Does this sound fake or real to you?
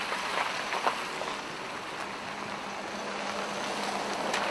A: real